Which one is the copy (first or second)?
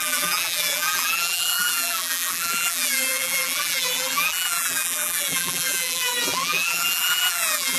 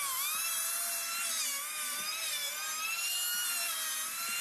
first